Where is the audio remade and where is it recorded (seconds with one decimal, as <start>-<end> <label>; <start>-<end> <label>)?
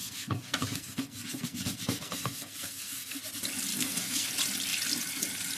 0.0-3.2 remade; 3.2-3.7 recorded; 3.7-4.3 remade; 4.3-5.6 recorded